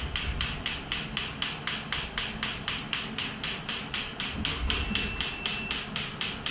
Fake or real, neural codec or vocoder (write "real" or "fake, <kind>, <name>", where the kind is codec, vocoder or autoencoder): real